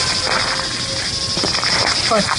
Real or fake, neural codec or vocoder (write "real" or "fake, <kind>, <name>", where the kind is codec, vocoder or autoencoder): real